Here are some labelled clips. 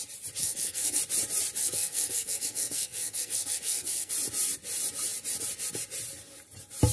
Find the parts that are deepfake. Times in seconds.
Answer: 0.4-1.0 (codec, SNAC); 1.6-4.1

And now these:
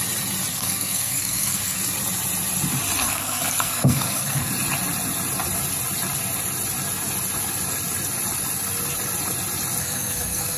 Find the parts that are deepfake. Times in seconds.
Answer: 0.5-1.8 (codec, SNAC); 3.0-4.5; 9.8-10.6

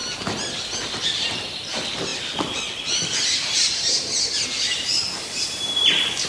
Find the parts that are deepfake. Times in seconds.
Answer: none

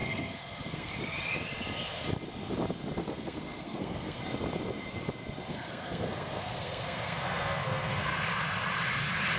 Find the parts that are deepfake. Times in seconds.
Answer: 0.0-0.9 (codec, SNAC); 3.0-4.2; 5.5-8.2

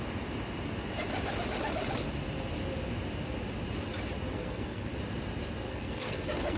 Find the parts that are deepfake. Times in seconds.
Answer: 4.3-4.9 (codec, SNAC); 5.7-6.6